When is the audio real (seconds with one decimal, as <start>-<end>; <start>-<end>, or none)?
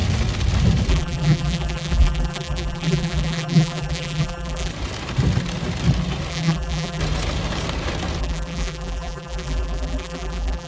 0.0-0.9; 4.7-6.3; 7.0-8.2